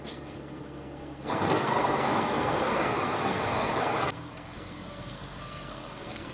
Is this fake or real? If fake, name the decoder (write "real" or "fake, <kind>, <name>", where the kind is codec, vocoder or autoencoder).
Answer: fake, codec, SNAC